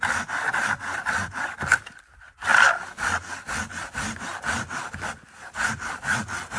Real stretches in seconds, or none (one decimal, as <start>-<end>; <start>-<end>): 0.0-6.6